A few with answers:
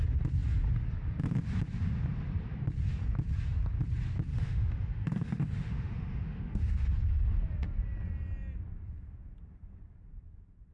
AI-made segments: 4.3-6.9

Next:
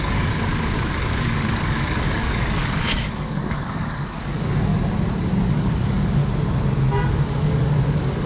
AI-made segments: 0.0-4.7; 5.5-6.2; 7.1-8.3

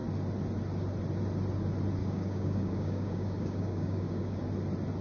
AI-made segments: 2.0-4.4

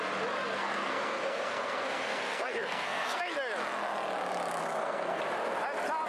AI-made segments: 0.5-3.2; 4.6-5.2

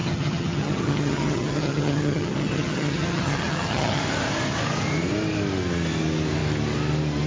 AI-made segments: 0.0-4.0

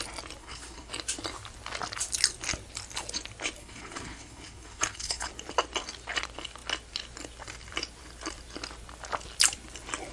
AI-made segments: 0.4-0.9; 3.6-5.3

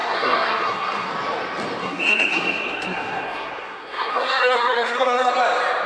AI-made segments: 0.0-1.1; 1.8-5.3

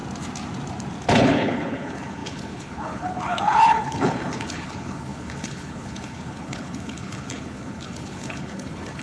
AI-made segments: 1.1-9.0